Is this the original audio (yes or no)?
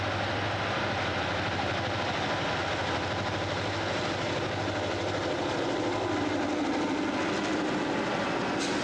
yes